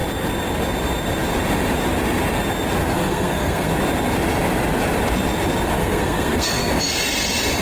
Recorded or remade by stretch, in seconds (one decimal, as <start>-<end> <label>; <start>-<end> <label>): 0.0-2.8 recorded; 2.8-3.7 remade; 3.7-5.8 recorded; 5.8-6.7 remade; 6.7-7.6 recorded